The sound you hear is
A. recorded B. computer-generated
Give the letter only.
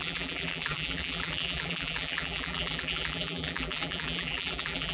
B